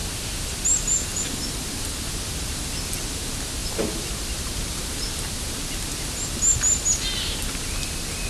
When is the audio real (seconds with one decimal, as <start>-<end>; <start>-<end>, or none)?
0.0-8.3